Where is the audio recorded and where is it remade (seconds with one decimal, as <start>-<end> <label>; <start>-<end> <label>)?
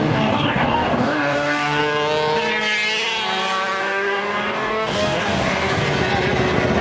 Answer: 0.0-1.8 remade; 1.8-3.8 recorded; 3.8-5.8 remade; 5.8-6.8 recorded